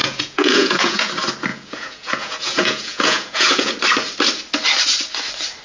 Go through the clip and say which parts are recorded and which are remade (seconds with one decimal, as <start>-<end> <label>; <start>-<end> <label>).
0.0-1.1 remade; 1.1-1.5 recorded; 1.5-3.7 remade; 3.7-5.6 recorded